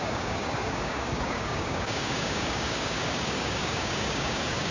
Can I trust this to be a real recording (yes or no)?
no